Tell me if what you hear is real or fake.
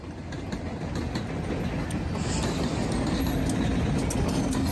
real